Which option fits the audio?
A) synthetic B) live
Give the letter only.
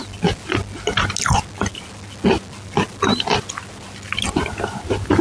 B